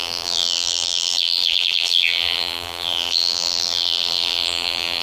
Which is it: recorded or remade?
remade